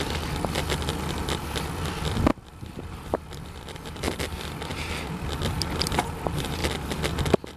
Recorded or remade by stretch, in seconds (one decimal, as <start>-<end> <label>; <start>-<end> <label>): 0.0-7.6 recorded